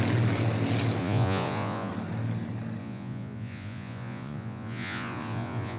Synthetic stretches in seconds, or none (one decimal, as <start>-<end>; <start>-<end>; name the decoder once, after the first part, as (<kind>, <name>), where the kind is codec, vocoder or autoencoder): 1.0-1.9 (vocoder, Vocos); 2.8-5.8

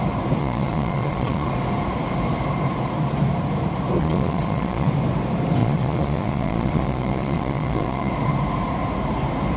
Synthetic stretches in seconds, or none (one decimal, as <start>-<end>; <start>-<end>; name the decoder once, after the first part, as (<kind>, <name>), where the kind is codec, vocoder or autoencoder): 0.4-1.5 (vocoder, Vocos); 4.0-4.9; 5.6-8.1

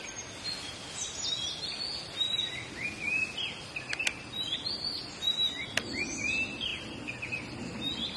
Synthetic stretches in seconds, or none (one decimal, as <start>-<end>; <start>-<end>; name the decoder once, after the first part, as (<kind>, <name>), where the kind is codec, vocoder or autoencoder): none

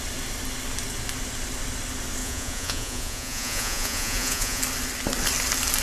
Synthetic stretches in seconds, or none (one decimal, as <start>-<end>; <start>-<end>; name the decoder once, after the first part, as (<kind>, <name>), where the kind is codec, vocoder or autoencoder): 2.2-4.6 (vocoder, Vocos)

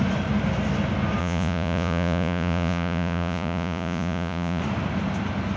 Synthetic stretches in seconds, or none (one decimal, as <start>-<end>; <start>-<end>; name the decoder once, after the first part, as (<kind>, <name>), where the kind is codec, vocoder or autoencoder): 1.2-4.6 (vocoder, Vocos)

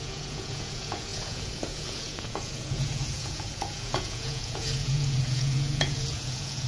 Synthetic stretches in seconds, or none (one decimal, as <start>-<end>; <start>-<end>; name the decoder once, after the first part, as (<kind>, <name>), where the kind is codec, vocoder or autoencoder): 0.0-6.7 (vocoder, Vocos)

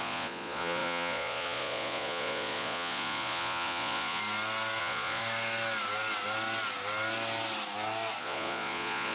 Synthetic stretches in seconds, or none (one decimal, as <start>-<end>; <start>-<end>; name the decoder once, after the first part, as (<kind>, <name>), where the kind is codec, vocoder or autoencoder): 0.0-4.2 (vocoder, Vocos); 4.8-5.2; 8.2-9.1

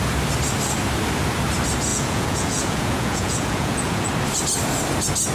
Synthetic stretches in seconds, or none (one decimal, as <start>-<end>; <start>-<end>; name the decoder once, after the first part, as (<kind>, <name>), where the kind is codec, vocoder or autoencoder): 1.9-4.1 (vocoder, Vocos)